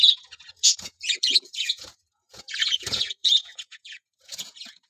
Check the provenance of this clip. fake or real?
fake